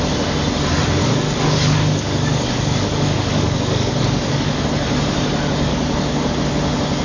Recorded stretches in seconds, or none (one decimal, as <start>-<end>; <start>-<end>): 0.0-1.0; 4.6-5.7; 6.3-7.0